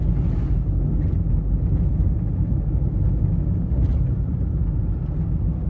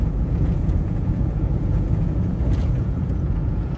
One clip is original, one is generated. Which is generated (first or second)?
second